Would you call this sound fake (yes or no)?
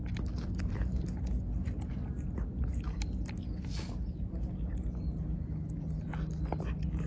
no